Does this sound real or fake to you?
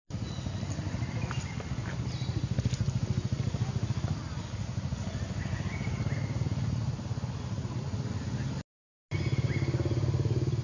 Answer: real